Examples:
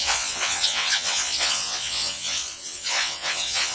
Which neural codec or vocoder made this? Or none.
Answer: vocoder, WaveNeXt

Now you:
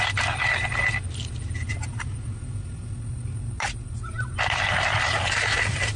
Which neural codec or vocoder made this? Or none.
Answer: none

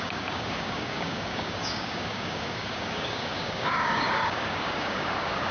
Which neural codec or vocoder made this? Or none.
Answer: codec, DAC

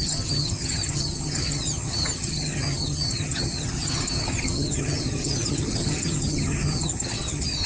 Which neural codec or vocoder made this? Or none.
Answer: vocoder, HiFi-GAN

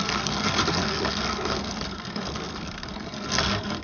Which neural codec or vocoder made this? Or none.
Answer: codec, SNAC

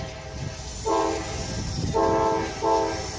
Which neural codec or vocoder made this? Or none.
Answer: none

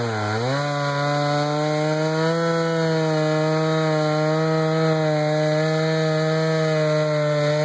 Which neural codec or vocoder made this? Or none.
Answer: none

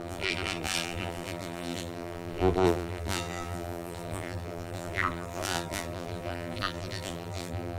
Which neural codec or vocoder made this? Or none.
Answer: vocoder, BigVGAN v2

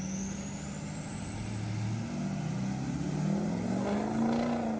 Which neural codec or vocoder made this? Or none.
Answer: none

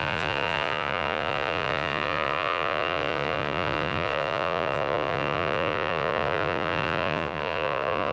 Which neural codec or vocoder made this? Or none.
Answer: vocoder, Vocos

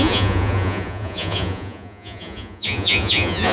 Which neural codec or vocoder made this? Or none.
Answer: vocoder, Vocos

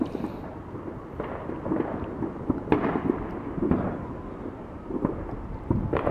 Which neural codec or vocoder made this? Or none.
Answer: none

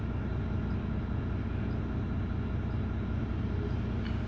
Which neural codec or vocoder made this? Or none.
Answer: none